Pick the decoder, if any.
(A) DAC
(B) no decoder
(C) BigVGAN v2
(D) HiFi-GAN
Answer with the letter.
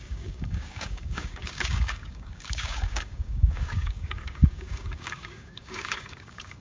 A